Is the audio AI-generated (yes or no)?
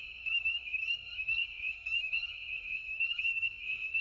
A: yes